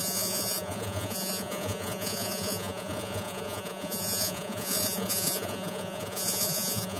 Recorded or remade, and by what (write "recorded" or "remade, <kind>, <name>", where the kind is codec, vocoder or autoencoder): remade, vocoder, Vocos